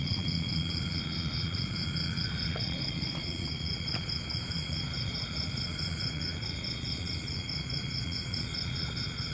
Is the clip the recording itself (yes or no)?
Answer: no